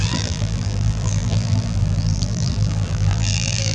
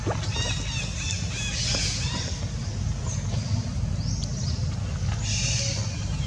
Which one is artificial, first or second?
first